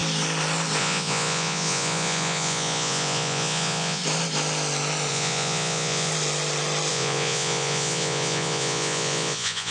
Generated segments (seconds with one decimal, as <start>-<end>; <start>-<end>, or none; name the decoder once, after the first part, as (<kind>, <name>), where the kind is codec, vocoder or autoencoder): 0.8-4.0 (vocoder, Vocos); 5.1-6.1; 6.9-9.7